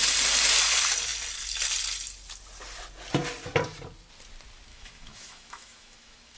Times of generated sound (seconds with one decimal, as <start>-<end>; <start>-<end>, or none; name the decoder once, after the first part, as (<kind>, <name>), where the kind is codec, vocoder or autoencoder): 4.7-6.4 (autoencoder, DAC-VAE)